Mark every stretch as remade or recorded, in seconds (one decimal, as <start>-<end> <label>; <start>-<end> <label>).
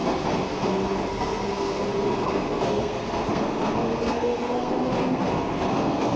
0.0-6.2 remade